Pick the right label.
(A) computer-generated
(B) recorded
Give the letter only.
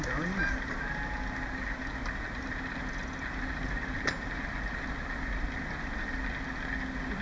B